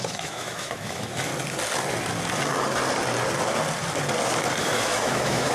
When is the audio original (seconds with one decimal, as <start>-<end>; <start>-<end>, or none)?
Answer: 1.3-4.6